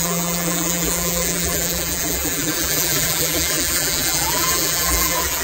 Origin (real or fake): fake